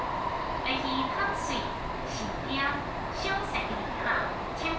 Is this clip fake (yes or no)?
no